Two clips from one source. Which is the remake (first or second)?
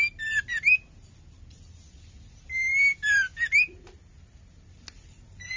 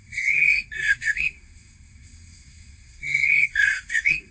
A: second